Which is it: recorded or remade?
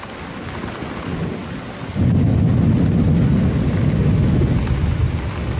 recorded